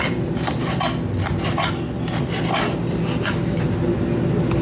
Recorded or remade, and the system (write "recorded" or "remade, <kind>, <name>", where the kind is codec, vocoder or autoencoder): recorded